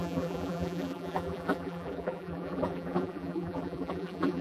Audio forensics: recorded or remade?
remade